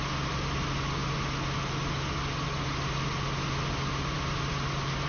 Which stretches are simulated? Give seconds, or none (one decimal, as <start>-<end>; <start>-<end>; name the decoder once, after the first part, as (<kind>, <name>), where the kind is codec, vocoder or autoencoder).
none